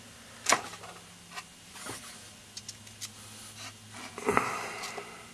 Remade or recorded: recorded